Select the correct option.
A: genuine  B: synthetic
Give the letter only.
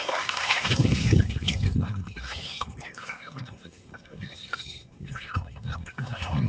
B